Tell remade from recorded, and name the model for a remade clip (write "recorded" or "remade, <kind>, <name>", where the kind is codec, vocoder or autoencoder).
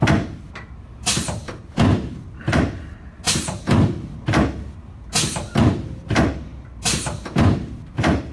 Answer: remade, vocoder, BigVGAN v2